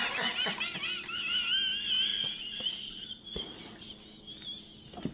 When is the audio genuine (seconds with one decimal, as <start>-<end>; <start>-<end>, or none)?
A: 0.0-2.1; 3.8-5.1